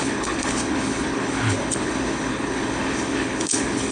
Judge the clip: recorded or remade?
remade